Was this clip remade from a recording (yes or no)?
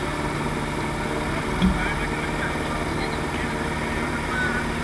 no